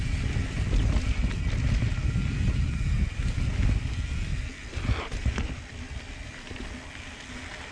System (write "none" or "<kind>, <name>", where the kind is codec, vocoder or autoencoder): none